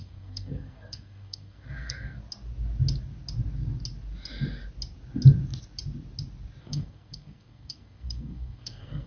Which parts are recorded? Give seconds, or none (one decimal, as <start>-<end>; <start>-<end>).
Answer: 2.2-6.6